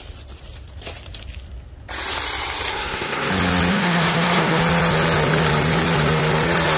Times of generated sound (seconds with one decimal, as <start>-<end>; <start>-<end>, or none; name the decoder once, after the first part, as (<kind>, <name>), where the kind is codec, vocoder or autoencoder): 2.7-3.3 (codec, SNAC); 3.7-4.6